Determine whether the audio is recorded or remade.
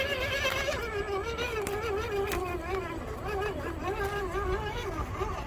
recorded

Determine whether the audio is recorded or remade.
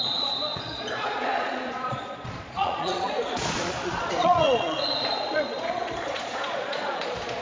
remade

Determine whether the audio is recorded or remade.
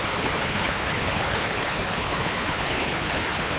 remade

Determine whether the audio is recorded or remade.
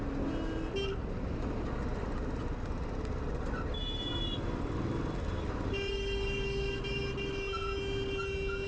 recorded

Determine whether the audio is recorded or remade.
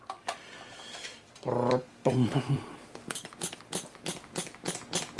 remade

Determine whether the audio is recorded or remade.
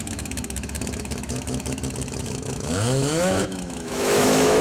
remade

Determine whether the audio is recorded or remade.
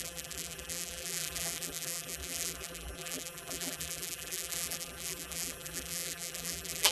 remade